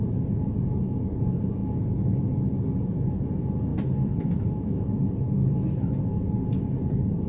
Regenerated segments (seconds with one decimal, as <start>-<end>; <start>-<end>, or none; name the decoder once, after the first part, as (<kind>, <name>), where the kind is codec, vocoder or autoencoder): none